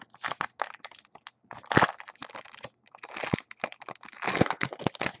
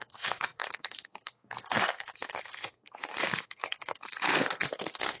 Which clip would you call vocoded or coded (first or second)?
second